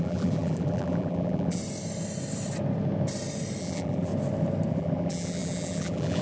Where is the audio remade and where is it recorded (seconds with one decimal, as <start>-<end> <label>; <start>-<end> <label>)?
0.0-1.6 remade; 1.6-3.6 recorded; 3.6-4.1 remade; 4.1-4.7 recorded; 4.7-6.2 remade